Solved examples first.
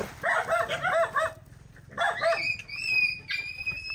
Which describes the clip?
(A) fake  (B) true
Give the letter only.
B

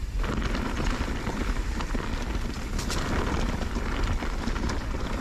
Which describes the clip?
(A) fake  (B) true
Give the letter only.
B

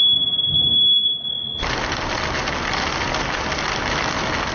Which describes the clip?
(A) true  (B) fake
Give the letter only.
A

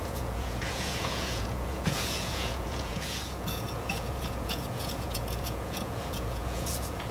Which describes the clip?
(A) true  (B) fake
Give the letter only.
B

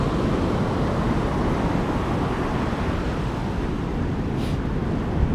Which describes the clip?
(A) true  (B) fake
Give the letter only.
A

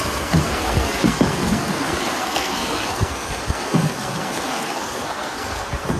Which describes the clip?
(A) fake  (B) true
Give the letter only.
A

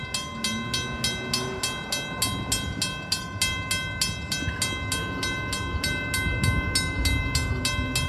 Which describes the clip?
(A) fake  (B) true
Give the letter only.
B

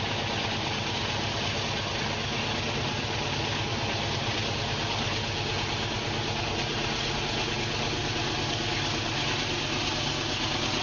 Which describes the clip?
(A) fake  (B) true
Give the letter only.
B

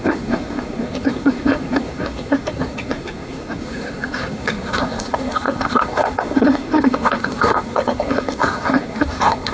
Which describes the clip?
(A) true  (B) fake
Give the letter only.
B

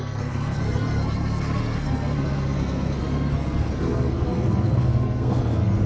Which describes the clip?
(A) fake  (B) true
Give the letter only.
A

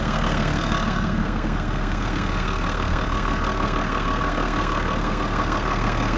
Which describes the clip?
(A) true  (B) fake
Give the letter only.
B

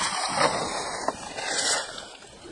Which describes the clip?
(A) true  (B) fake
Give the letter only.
A